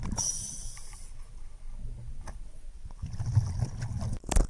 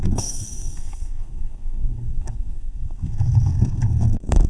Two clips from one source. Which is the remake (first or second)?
second